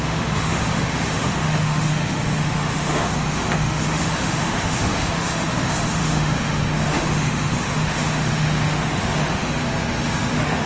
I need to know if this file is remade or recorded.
remade